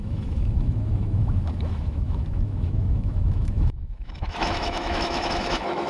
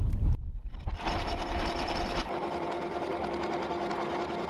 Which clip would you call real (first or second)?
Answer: second